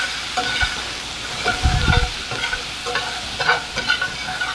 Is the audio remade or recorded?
recorded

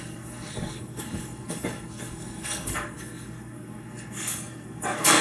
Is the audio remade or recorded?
remade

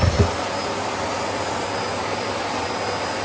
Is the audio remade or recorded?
recorded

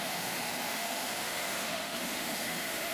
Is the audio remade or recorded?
remade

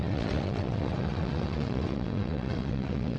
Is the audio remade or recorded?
remade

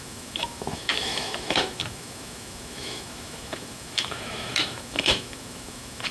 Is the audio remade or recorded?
remade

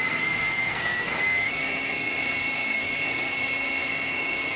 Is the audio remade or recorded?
remade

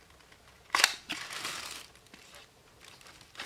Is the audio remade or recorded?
remade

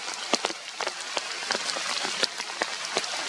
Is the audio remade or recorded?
recorded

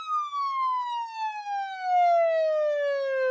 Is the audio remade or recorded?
recorded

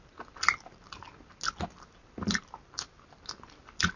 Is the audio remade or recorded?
recorded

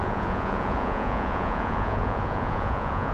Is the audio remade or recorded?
remade